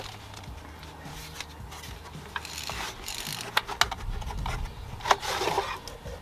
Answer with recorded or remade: recorded